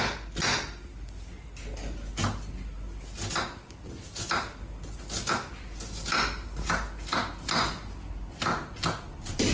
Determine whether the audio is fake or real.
real